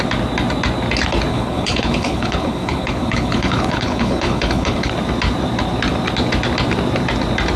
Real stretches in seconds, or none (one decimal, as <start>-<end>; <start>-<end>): 0.0-1.3; 4.9-7.6